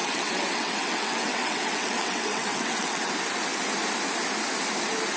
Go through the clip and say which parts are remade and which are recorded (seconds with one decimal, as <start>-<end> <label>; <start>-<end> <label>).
0.0-3.1 remade; 3.1-5.2 recorded